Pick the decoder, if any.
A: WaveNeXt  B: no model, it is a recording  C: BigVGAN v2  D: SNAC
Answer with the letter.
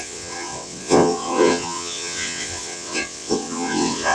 A